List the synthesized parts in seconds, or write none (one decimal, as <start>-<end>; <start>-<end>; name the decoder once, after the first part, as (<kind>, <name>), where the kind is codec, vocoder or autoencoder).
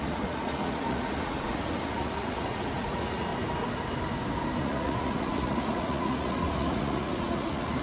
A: 0.0-3.3 (vocoder, Vocos); 4.6-7.8